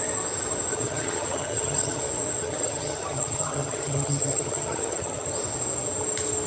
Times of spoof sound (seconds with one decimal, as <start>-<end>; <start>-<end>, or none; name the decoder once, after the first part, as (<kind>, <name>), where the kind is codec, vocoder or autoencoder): 0.7-2.0 (vocoder, HiFi-GAN); 2.4-5.3